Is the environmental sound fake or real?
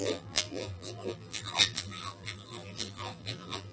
fake